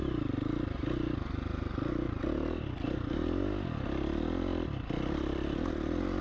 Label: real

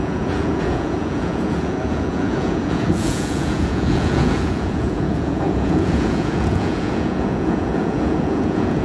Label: fake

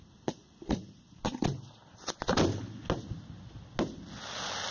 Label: real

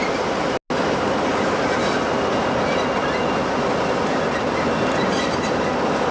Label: real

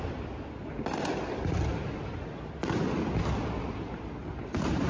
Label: real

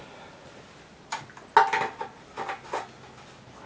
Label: real